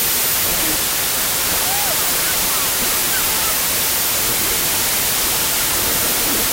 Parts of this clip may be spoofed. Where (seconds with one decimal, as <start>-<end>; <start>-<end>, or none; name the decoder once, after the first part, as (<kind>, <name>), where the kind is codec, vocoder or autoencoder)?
none